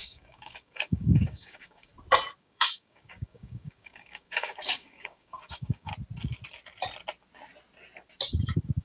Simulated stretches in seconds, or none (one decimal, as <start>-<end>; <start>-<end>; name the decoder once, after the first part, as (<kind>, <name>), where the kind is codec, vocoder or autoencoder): 0.0-1.9 (codec, DAC); 2.4-5.9